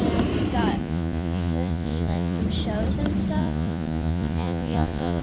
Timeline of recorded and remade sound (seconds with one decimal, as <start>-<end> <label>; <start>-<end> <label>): 0.0-0.8 recorded; 0.8-2.4 remade; 2.4-3.4 recorded; 3.4-5.2 remade